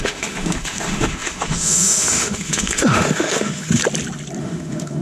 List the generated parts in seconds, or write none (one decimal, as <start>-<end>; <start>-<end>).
0.0-3.8; 4.4-5.0